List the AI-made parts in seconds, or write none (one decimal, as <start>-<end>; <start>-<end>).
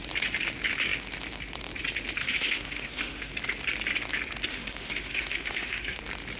2.2-3.3; 4.5-6.0